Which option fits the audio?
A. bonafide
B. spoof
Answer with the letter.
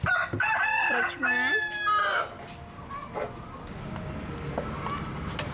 A